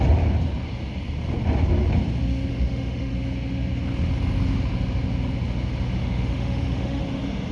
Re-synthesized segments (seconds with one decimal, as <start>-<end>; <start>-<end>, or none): 2.5-3.1; 6.0-7.0